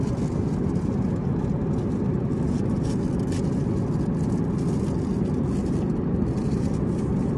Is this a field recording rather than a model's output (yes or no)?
yes